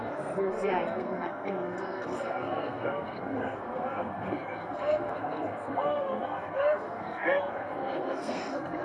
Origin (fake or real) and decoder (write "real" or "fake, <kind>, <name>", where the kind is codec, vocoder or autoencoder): fake, codec, SNAC